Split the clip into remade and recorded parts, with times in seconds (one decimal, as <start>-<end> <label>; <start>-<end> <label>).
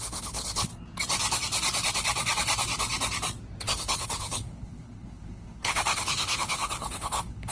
0.0-0.7 remade; 0.7-3.6 recorded; 3.6-7.5 remade